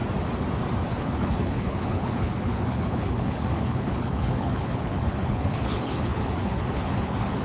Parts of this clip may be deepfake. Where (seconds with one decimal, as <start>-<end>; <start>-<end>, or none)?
0.9-7.4